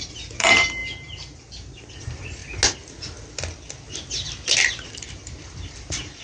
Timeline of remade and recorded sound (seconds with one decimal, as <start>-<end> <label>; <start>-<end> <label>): 0.0-2.4 remade; 2.4-4.9 recorded; 4.9-6.2 remade